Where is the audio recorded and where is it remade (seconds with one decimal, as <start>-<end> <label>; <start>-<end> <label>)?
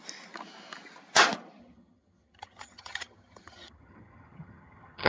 0.0-1.6 recorded; 1.6-5.1 remade